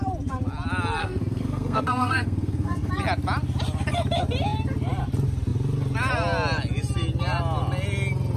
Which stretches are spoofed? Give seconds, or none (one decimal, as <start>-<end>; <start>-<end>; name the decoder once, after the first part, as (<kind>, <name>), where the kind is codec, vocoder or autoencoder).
1.0-2.9 (codec, SNAC)